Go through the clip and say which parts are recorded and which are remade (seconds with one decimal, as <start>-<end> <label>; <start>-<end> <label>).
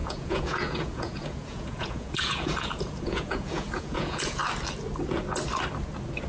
0.0-4.4 remade; 4.4-6.3 recorded